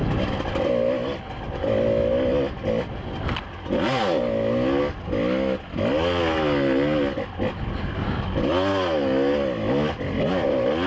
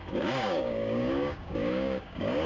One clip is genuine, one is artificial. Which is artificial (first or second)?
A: second